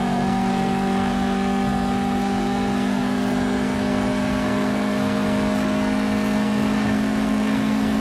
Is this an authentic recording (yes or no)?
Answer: no